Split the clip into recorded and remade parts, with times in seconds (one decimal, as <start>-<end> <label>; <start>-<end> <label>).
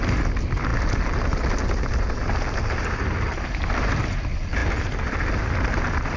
0.0-6.2 recorded